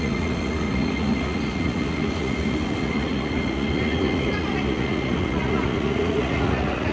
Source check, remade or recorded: remade